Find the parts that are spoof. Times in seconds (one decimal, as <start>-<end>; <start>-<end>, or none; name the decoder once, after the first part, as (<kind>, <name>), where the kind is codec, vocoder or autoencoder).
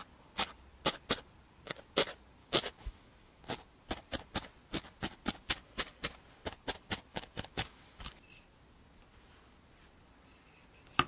2.4-3.4 (autoencoder, DAC-VAE); 7.1-8.0